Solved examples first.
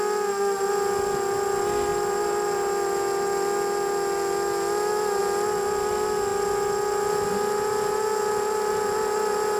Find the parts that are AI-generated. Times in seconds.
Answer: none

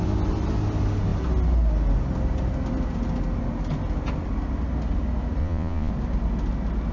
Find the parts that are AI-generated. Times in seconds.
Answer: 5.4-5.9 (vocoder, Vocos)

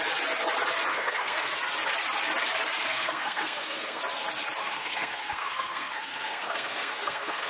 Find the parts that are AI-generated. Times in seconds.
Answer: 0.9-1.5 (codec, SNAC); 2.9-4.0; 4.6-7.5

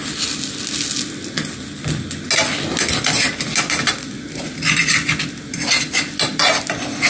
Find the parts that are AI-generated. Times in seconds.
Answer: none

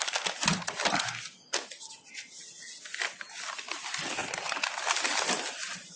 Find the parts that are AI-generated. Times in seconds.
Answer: none

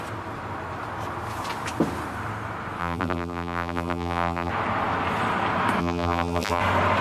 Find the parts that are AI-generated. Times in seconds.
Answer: 2.8-4.5 (vocoder, BigVGAN v2); 5.8-6.6

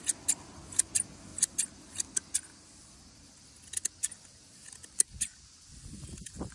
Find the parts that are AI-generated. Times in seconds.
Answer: none